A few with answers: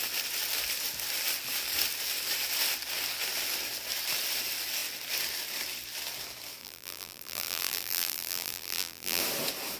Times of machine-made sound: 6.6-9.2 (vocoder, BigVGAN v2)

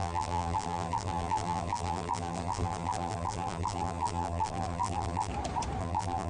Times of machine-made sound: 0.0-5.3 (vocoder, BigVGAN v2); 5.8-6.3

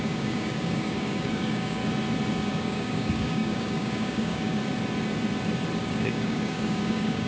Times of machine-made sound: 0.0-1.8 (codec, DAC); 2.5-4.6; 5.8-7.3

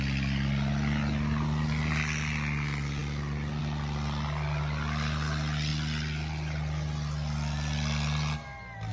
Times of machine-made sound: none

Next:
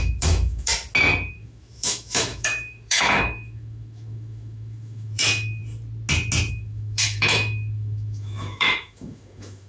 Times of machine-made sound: 0.0-0.7 (autoencoder, DAC-VAE); 1.3-5.6; 6.5-9.7

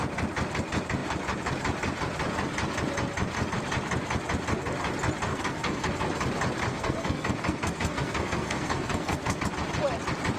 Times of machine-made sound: 5.3-5.9 (codec, SNAC); 6.7-9.4